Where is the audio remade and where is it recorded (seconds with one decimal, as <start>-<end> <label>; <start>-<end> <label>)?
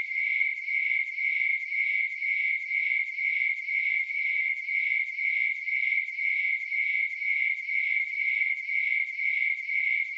0.0-1.5 recorded; 1.5-2.7 remade; 2.7-6.3 recorded; 6.3-7.4 remade; 7.4-10.2 recorded